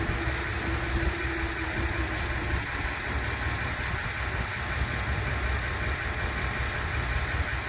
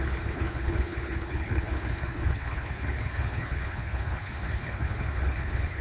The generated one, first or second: second